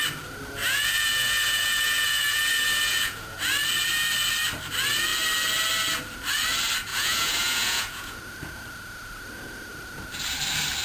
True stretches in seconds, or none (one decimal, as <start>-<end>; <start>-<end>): 0.0-0.6; 3.4-6.9; 8.2-10.8